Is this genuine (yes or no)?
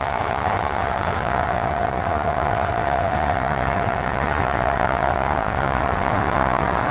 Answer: no